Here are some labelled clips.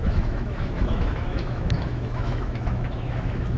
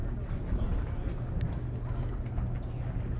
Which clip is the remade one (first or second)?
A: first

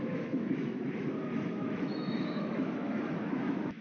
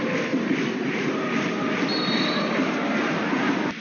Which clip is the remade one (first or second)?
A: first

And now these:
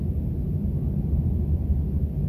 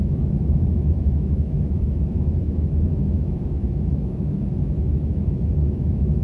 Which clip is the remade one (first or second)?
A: second